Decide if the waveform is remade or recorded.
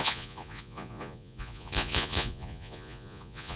remade